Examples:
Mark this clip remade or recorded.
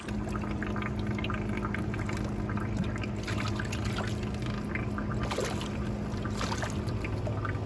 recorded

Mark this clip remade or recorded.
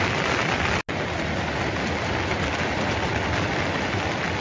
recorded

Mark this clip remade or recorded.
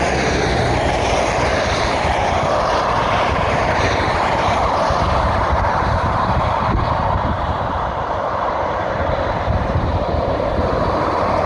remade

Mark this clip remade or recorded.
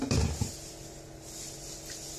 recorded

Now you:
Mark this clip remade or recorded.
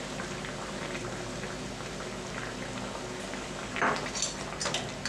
recorded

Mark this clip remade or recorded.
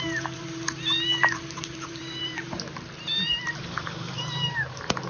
remade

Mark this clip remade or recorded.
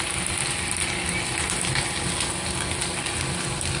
recorded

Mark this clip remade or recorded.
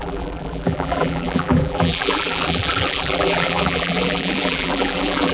remade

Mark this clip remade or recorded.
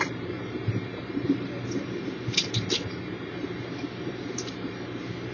remade